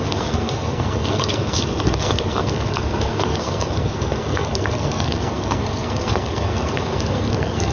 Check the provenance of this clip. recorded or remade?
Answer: remade